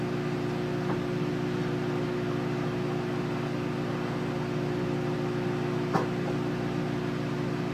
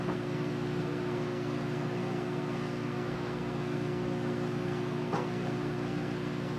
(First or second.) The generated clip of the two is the second